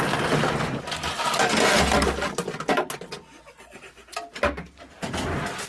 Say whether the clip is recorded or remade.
recorded